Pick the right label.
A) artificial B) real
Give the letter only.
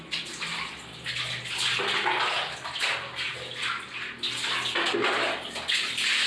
B